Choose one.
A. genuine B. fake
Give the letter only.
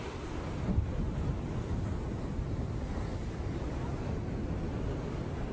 A